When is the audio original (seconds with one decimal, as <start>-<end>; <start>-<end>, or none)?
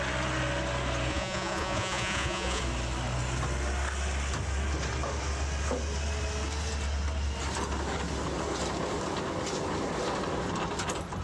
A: 0.0-1.1; 2.6-11.2